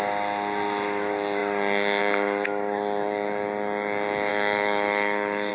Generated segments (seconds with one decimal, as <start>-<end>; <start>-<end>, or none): 4.3-5.5